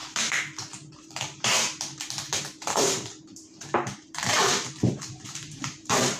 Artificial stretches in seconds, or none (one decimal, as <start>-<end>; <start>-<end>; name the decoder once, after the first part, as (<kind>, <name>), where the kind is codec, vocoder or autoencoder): 0.9-6.2 (vocoder, BigVGAN v2)